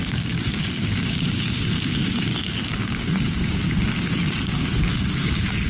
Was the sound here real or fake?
fake